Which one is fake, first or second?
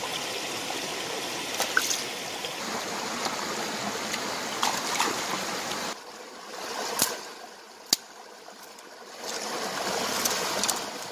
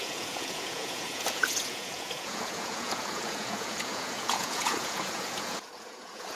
second